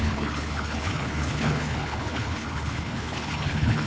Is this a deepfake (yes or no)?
yes